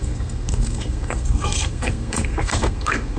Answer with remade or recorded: remade